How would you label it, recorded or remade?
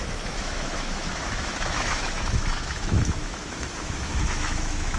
remade